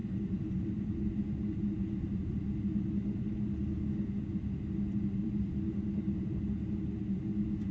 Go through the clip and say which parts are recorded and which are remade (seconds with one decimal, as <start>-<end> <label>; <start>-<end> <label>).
0.0-3.2 remade; 3.2-5.2 recorded; 5.2-6.4 remade; 6.4-7.7 recorded